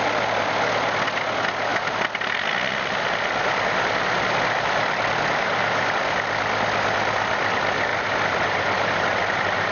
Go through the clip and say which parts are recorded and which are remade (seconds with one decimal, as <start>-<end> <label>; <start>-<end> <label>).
0.0-7.9 recorded; 7.9-9.7 remade